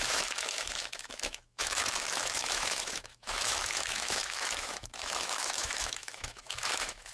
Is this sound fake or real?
fake